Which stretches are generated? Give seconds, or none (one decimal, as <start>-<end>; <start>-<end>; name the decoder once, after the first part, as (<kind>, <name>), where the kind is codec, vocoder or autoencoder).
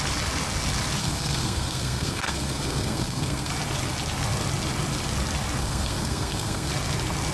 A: 1.0-3.5 (codec, SNAC); 5.6-6.7